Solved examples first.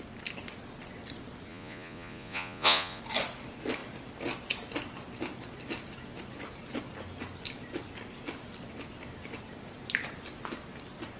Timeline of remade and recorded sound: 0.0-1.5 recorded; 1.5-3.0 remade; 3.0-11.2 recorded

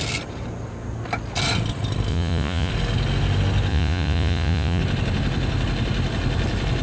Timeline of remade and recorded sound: 0.0-2.1 recorded; 2.1-2.7 remade; 2.7-3.7 recorded; 3.7-4.8 remade; 4.8-6.8 recorded

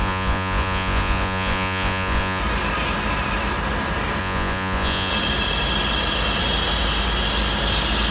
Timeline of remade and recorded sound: 0.0-2.4 remade; 2.4-4.2 recorded; 4.2-5.1 remade; 5.1-8.1 recorded